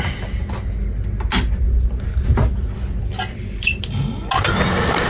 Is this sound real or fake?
real